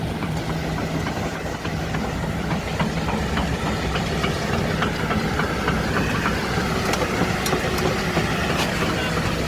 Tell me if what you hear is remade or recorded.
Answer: recorded